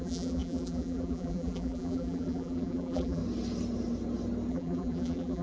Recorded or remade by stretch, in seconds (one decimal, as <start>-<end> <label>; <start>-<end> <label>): 0.0-3.2 remade; 3.2-4.5 recorded; 4.5-5.4 remade